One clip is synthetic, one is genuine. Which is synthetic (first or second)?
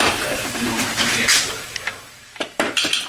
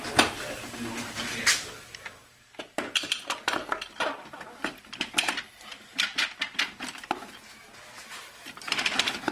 first